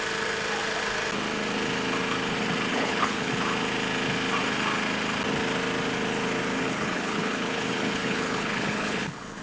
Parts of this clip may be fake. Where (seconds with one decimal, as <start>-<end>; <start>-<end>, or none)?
2.7-3.3; 6.5-9.4